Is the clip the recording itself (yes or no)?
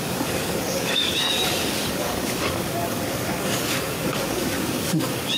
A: no